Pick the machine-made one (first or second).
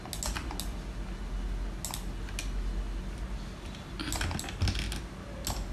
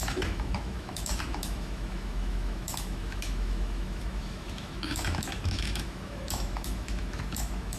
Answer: second